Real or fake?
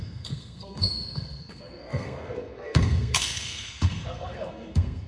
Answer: fake